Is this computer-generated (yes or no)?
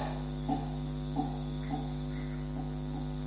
no